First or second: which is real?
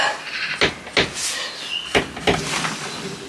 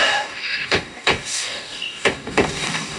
first